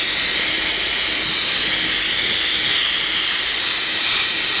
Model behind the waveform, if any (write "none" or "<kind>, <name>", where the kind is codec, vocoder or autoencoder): none